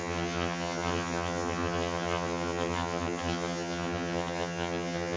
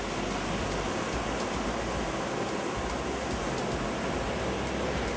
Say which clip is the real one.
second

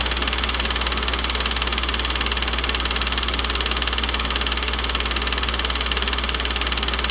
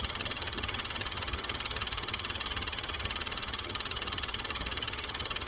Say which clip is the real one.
first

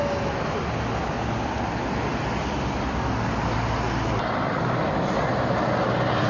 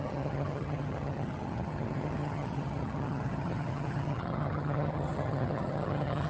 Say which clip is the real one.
first